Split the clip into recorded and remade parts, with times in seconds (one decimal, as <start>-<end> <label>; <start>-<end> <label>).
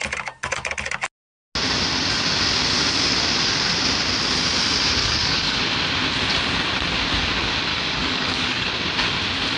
0.0-5.0 recorded; 5.0-5.6 remade; 5.6-7.7 recorded; 7.7-8.7 remade; 8.7-9.6 recorded